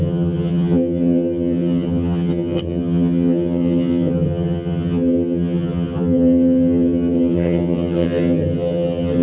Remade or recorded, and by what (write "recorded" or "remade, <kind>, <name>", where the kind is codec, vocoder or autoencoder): remade, vocoder, HiFi-GAN